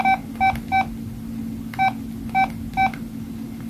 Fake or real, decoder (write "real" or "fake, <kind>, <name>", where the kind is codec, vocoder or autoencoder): real